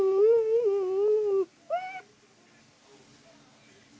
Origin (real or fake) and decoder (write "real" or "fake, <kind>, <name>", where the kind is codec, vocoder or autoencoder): real